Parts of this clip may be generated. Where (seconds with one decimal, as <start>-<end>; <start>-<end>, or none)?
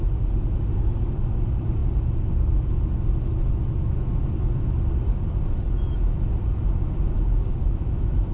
7.6-8.3